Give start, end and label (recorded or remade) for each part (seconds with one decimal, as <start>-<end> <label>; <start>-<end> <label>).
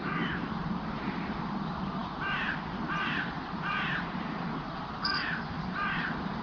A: 0.0-6.4 remade